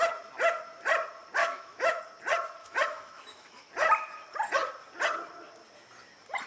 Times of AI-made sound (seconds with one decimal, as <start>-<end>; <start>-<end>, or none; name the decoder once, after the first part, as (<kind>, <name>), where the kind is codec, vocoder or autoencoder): 1.4-2.0 (autoencoder, DAC-VAE); 2.6-3.7

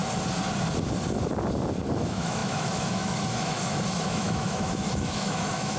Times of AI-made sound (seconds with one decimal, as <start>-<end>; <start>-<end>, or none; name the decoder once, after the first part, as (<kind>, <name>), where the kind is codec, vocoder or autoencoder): 1.9-5.8 (autoencoder, DAC-VAE)

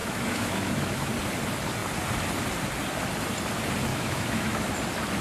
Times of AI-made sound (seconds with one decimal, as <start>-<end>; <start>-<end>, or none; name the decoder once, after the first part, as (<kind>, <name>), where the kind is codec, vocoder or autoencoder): 0.0-1.1 (autoencoder, DAC-VAE); 3.9-4.7

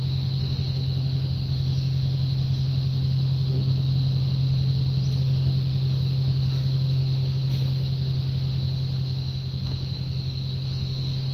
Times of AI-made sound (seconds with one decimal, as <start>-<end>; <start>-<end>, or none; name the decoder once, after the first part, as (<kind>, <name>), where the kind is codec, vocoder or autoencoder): 0.0-3.7 (autoencoder, DAC-VAE); 5.2-11.3

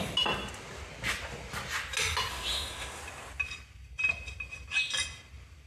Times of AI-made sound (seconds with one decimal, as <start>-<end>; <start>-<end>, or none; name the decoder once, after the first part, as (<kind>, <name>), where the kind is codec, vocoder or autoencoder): 2.3-3.0 (autoencoder, DAC-VAE)

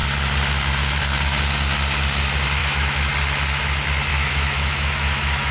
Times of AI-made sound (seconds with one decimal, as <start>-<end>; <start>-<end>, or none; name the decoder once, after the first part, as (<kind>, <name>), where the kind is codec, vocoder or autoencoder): 2.6-3.1 (autoencoder, DAC-VAE); 4.1-5.5

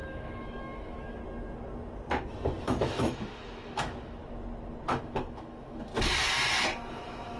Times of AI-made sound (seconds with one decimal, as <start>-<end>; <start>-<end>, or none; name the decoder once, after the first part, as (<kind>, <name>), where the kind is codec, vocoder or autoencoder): 0.0-1.2 (autoencoder, DAC-VAE); 2.6-4.2; 4.9-5.9; 6.9-7.4

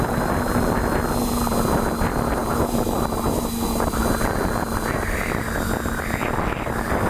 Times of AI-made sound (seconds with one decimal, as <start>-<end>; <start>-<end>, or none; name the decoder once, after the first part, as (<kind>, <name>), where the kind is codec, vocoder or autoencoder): none